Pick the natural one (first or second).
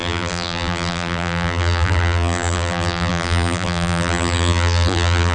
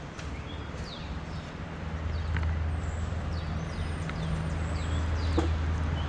second